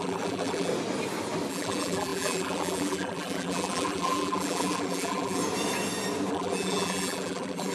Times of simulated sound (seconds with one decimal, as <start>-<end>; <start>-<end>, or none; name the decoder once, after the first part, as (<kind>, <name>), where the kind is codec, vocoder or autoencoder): 0.0-0.7 (vocoder, BigVGAN v2); 1.5-5.4; 6.3-7.7